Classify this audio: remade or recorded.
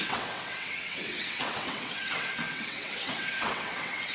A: remade